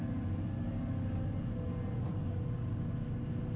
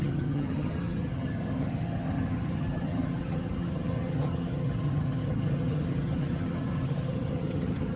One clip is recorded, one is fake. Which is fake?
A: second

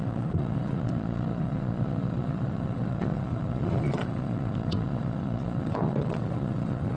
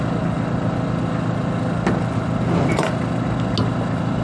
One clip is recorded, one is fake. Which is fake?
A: first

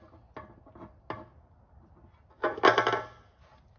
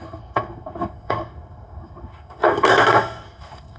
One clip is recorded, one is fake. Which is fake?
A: second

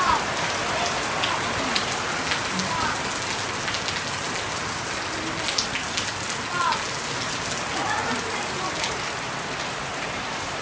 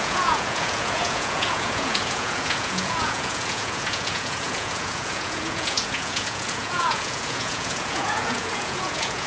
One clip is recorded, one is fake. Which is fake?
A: second